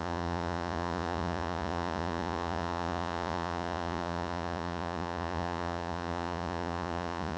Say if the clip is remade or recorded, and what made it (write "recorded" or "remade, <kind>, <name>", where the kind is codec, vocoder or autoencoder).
remade, vocoder, Vocos